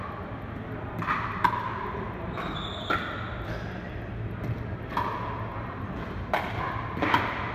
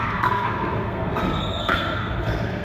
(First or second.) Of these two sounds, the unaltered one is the first